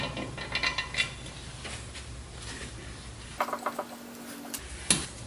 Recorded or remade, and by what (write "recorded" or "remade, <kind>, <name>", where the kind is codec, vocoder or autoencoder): recorded